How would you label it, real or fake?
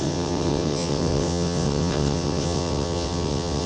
fake